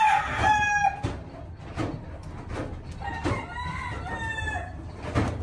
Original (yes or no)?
yes